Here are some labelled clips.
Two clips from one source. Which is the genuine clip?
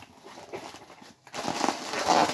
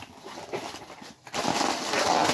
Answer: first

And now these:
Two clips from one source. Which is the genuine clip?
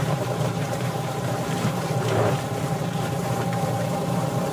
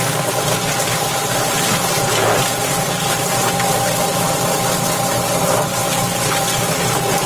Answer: second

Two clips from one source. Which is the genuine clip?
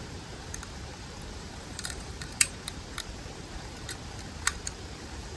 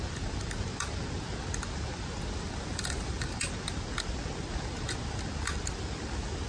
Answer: second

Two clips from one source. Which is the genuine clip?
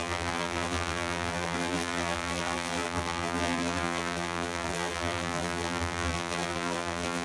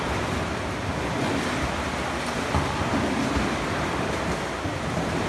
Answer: second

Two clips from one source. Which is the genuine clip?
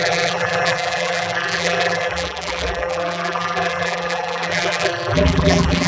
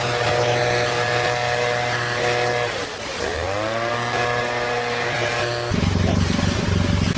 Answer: second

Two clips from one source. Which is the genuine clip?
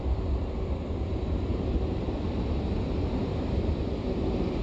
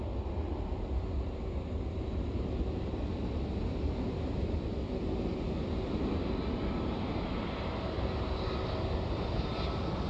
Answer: second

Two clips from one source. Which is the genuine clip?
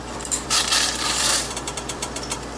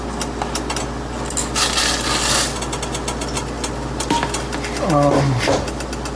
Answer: second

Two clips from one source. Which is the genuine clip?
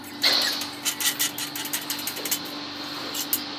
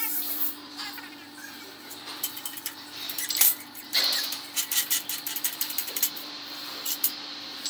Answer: first